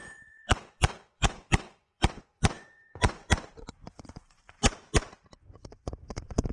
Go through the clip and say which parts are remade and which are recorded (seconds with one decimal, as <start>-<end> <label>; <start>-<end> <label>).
0.0-4.7 remade; 4.7-5.3 recorded; 5.3-6.5 remade